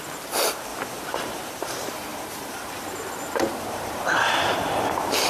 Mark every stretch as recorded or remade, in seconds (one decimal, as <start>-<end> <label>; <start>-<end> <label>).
0.0-0.7 remade; 0.7-1.5 recorded; 1.5-5.3 remade